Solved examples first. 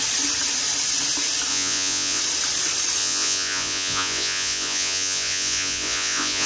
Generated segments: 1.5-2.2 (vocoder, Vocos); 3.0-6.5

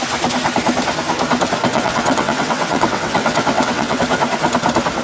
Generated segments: 1.7-4.0 (vocoder, WaveNeXt)

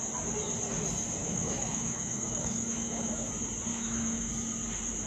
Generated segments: 1.2-3.3 (autoencoder, DAC-VAE); 3.7-4.3

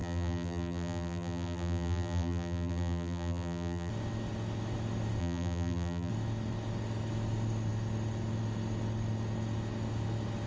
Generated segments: 0.0-3.9 (vocoder, BigVGAN v2); 5.2-6.1